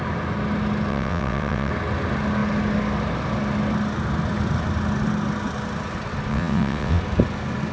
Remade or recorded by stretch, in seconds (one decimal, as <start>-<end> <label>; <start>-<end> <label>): 0.0-0.9 recorded; 0.9-1.7 remade; 1.7-6.3 recorded; 6.3-7.0 remade; 7.0-7.7 recorded